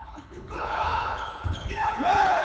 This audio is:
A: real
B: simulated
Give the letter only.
B